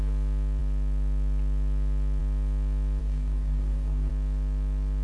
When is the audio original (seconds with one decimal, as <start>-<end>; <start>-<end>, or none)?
0.0-3.0; 4.1-5.0